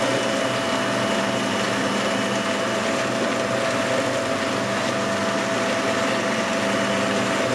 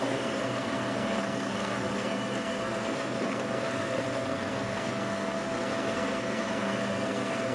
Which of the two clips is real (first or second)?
first